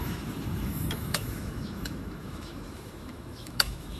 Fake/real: fake